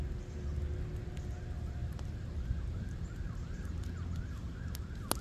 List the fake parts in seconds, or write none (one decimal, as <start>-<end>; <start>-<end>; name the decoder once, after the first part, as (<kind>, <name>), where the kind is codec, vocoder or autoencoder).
none